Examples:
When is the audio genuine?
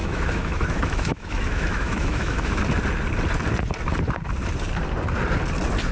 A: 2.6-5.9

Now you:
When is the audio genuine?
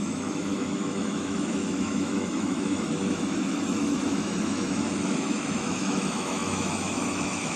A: none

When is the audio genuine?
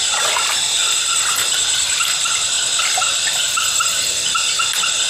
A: 0.0-5.1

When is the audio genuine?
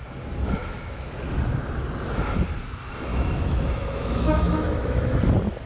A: 0.0-0.6; 1.1-3.1; 5.2-5.7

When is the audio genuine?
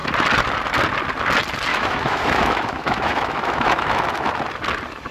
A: 0.0-1.7; 4.3-5.1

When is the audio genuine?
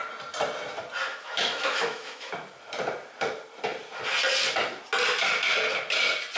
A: 0.0-1.1; 2.3-6.4